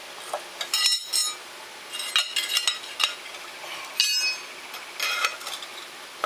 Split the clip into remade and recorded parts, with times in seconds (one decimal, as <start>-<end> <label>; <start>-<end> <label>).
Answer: 0.0-6.3 recorded